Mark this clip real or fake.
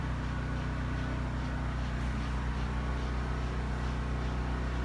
real